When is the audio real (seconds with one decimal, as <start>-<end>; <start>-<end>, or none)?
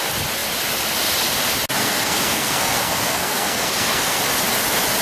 0.0-1.8; 4.2-5.0